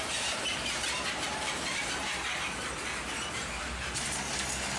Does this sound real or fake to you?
fake